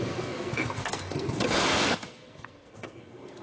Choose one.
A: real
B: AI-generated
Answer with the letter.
B